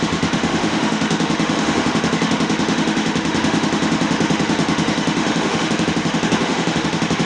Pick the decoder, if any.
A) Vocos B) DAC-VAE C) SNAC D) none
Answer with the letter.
B